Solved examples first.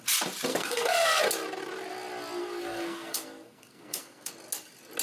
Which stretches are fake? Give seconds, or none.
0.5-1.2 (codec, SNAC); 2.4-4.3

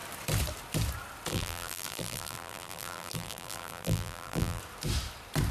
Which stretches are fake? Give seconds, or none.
1.3-4.6 (vocoder, BigVGAN v2)

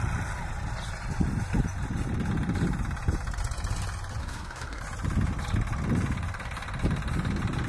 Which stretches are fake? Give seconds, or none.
4.2-4.8 (codec, SNAC)

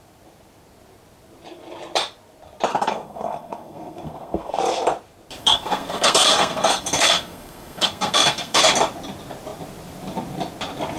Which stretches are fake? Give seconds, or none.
2.7-4.6 (codec, SNAC); 5.4-8.6

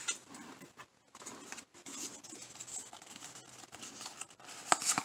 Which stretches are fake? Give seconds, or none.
none

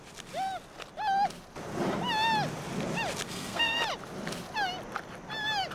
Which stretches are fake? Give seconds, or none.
3.3-3.8 (codec, SNAC)

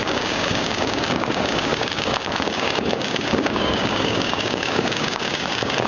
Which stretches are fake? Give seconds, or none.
0.0-5.9 (codec, DAC)

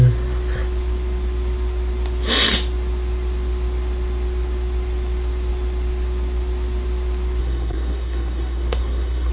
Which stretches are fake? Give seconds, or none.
7.4-9.3 (codec, SNAC)